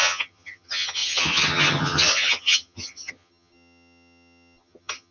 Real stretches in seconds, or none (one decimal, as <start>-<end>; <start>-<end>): none